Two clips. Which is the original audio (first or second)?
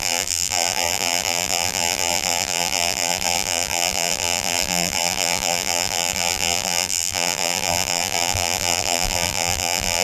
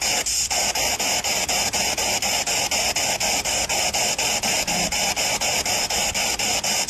second